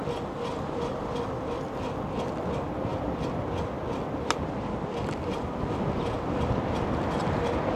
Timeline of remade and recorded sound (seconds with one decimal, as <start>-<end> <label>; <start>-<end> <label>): 0.0-7.8 recorded